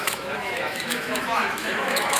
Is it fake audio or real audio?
fake